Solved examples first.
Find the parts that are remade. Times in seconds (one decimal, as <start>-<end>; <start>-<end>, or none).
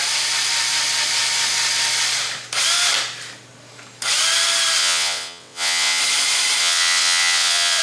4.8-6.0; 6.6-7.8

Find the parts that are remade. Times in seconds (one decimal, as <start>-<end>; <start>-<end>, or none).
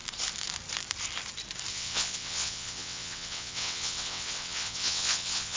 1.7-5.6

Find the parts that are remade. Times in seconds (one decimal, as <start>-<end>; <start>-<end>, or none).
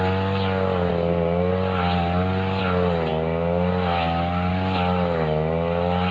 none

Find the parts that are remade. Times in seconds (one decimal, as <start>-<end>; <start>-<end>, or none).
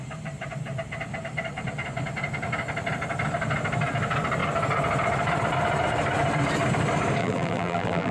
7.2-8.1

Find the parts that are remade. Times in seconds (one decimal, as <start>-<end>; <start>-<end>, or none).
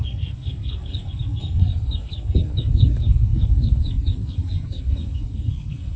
0.0-6.0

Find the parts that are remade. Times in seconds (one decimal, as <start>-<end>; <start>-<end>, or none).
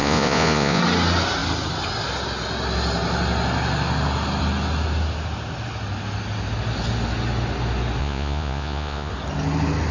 0.0-0.8; 8.0-9.1